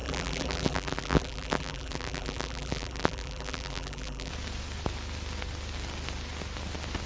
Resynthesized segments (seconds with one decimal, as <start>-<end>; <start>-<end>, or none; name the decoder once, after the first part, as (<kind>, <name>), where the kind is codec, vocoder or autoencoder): 0.0-4.3 (vocoder, BigVGAN v2)